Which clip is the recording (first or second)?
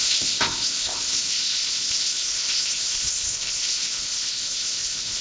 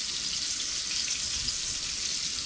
second